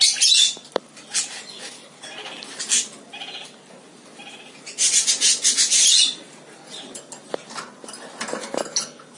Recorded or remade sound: recorded